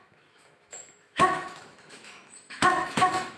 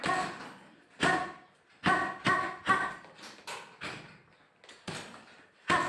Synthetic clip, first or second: first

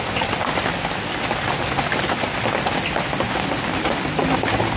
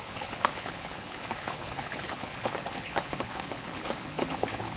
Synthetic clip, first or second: second